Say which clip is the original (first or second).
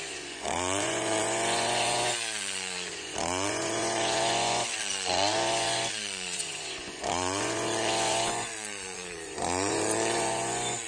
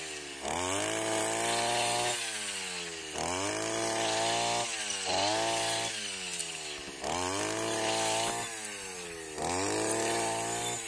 second